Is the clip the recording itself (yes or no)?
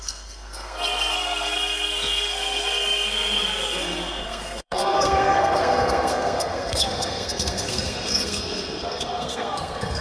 no